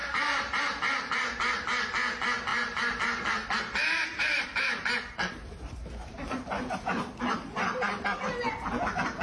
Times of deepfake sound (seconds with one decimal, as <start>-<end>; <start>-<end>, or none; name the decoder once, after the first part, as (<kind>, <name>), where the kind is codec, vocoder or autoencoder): 0.0-0.6 (vocoder, BigVGAN v2); 2.5-3.0; 3.8-8.0